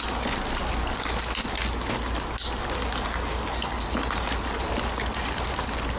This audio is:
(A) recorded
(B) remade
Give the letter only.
A